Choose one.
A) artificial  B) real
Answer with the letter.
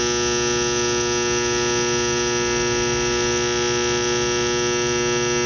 B